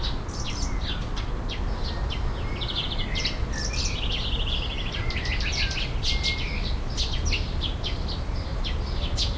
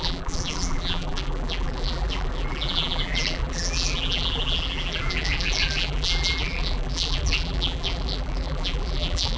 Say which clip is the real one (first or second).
first